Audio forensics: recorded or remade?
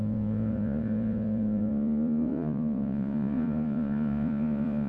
remade